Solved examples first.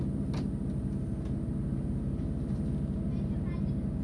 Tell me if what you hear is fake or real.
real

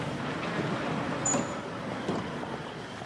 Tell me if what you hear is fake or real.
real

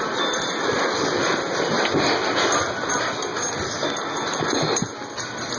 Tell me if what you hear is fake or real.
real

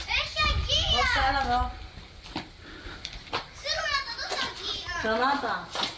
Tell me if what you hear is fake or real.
real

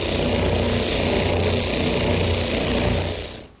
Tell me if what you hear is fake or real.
real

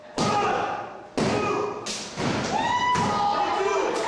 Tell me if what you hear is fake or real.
real